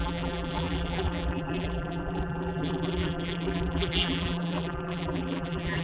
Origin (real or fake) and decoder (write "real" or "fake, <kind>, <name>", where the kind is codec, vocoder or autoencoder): fake, vocoder, BigVGAN v2